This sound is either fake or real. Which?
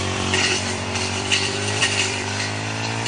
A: fake